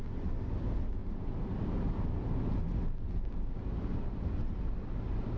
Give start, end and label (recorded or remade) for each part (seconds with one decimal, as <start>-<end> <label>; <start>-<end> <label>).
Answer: 0.0-5.4 recorded